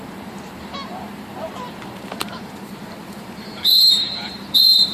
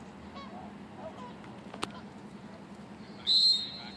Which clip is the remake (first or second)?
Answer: first